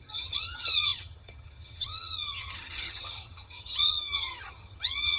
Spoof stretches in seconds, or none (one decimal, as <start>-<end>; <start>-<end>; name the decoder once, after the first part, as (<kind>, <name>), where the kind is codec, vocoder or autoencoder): 0.0-5.2 (vocoder, HiFi-GAN)